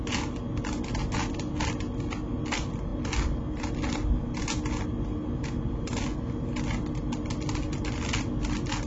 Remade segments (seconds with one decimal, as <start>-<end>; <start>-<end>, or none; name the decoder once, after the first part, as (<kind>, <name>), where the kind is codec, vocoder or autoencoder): none